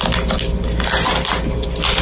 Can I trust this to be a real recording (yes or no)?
yes